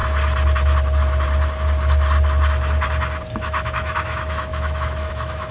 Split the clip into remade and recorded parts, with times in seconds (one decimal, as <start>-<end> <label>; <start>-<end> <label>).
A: 0.0-3.3 recorded; 3.3-5.5 remade